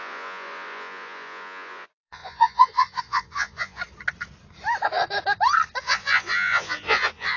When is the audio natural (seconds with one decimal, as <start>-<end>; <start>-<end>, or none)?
3.8-5.8